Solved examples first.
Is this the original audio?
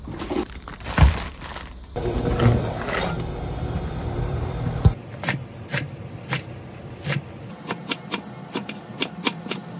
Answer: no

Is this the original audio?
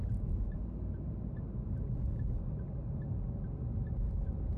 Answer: yes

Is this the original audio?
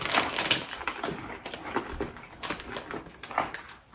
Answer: yes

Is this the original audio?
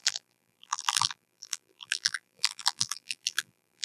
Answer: no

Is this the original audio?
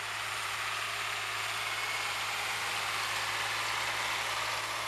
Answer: yes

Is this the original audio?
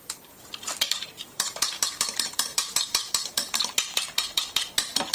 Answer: no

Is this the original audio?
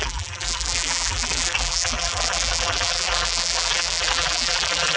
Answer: no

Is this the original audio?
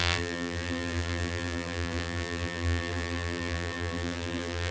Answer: no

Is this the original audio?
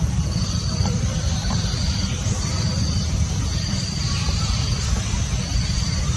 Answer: no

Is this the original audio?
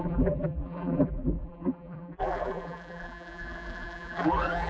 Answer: no